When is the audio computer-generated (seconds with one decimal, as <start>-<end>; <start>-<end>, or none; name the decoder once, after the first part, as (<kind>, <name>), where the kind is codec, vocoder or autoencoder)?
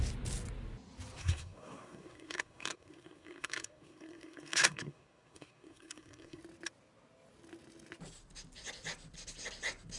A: 1.2-6.4 (codec, SNAC)